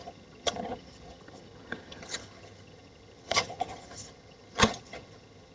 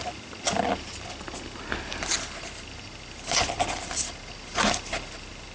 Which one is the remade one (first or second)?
first